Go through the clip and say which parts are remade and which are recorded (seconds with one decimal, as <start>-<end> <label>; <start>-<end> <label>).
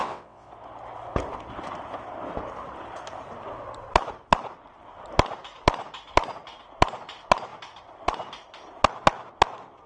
0.0-0.5 remade; 0.5-9.9 recorded